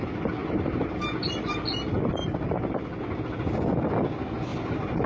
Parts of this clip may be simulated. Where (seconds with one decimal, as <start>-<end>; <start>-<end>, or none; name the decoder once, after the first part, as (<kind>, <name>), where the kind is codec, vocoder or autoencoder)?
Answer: 0.4-1.0 (vocoder, BigVGAN v2); 2.2-3.0; 4.5-5.1